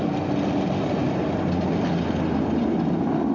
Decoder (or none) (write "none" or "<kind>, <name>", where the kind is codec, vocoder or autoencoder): none